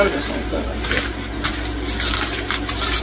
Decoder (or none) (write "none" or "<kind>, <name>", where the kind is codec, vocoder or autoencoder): none